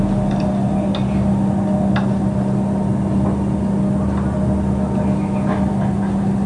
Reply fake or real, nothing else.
real